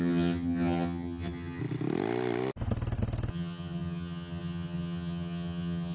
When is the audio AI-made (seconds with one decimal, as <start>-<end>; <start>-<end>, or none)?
0.0-1.6; 3.3-5.9